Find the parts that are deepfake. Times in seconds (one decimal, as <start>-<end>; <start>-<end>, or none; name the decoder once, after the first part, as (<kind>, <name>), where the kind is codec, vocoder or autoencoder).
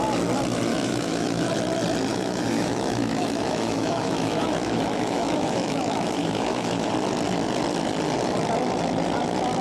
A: 0.7-1.5 (autoencoder, DAC-VAE); 2.1-6.9